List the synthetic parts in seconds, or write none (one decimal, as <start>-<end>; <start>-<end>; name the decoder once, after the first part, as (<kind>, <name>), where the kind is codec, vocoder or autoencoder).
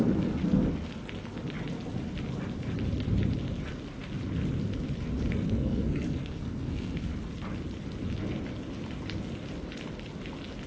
0.0-0.4 (codec, SNAC); 5.3-7.1